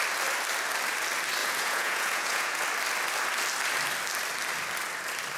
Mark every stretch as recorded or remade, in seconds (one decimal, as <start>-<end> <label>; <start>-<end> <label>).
0.0-1.4 recorded; 1.4-2.6 remade; 2.6-5.4 recorded